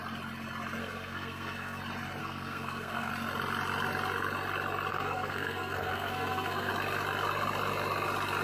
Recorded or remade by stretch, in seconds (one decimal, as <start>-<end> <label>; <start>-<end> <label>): 0.0-0.8 recorded; 0.8-1.8 remade; 1.8-2.2 recorded; 2.2-3.1 remade; 3.1-4.9 recorded; 4.9-6.7 remade; 6.7-8.4 recorded